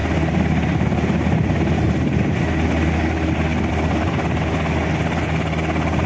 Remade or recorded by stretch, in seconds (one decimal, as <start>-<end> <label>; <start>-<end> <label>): 0.0-6.1 recorded